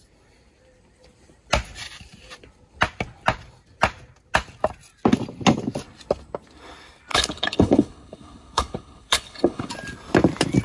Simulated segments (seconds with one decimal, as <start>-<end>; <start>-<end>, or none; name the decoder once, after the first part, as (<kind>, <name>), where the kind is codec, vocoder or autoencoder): 7.1-9.7 (codec, HILCodec)

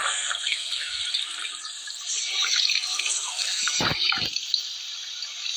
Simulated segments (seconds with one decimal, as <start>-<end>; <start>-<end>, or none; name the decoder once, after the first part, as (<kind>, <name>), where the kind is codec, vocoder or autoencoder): 0.0-1.0 (codec, SNAC); 2.9-3.8

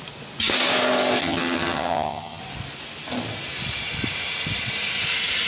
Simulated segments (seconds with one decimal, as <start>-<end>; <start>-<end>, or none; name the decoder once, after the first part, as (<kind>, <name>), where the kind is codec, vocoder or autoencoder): 1.2-2.4 (vocoder, HiFi-GAN)